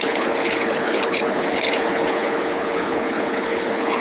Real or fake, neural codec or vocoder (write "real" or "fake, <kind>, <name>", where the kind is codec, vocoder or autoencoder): fake, codec, HILCodec